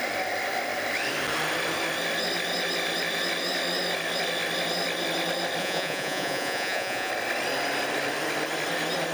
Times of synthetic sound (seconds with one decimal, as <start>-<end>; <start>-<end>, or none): 5.6-7.1